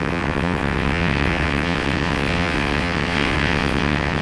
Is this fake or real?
fake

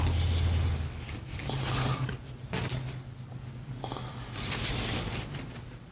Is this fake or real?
real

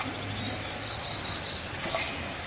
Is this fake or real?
real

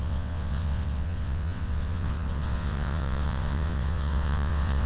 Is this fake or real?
fake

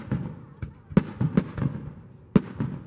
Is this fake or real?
real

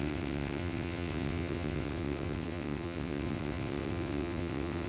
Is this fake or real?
fake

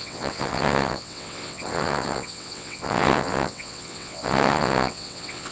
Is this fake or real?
fake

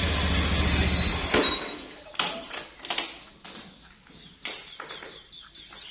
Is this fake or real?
real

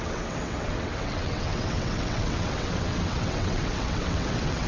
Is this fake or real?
fake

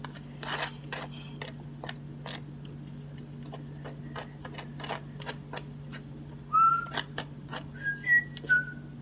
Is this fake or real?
real